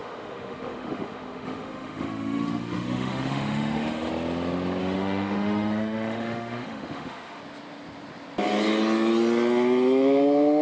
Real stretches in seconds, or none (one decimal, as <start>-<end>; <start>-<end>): 4.1-4.8; 7.4-10.6